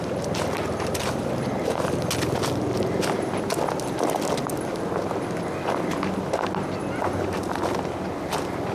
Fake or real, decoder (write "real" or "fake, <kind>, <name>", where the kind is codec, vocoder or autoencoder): real